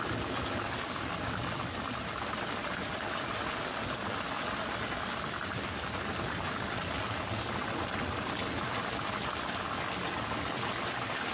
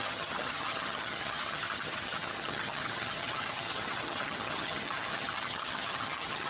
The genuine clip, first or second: first